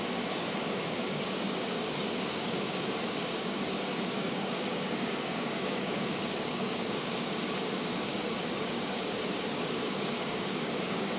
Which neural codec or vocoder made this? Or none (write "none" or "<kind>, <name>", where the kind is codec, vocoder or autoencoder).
codec, DAC